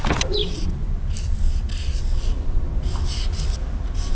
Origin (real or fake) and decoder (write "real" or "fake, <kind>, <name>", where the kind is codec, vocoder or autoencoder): real